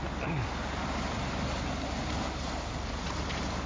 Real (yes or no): yes